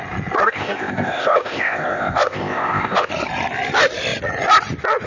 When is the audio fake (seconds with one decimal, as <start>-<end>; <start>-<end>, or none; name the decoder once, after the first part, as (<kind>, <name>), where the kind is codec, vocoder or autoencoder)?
0.4-3.1 (codec, ZipCodec)